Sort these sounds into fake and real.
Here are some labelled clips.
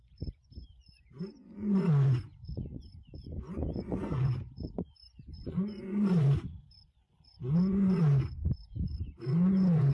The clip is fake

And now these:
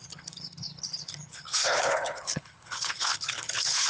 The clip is fake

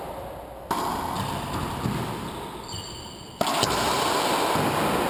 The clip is real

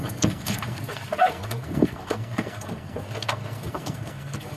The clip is fake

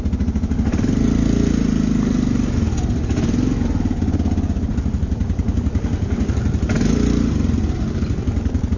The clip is real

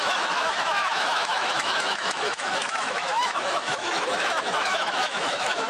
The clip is fake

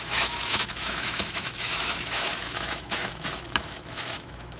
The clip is fake